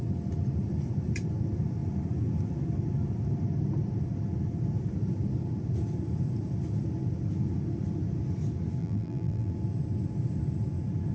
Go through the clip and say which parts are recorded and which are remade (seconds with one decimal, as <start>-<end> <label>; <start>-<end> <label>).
0.0-8.8 recorded; 8.8-9.5 remade; 9.5-11.1 recorded